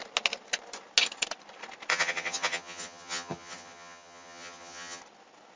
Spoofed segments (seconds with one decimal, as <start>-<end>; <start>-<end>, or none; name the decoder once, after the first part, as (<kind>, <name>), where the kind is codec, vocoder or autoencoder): 1.9-5.0 (vocoder, HiFi-GAN)